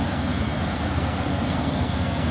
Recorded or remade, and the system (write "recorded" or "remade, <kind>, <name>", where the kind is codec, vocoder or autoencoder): remade, codec, SNAC